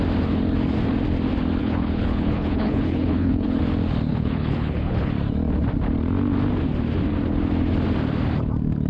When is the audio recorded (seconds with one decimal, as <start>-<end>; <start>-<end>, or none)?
0.0-1.6; 3.6-4.1; 5.1-8.9